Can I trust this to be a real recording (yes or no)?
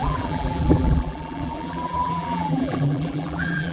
no